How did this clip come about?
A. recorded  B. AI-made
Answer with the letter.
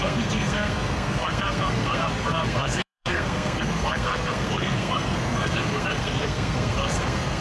B